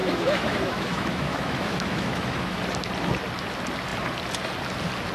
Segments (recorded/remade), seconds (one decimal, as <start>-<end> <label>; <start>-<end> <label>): 0.0-2.6 remade; 2.6-5.1 recorded